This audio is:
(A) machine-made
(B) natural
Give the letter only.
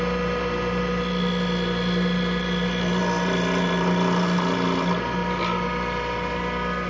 B